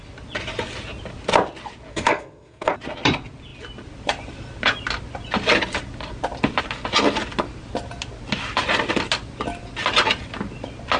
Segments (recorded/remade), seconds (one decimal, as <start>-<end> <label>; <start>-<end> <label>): 0.0-1.9 recorded; 1.9-2.7 remade; 2.7-11.0 recorded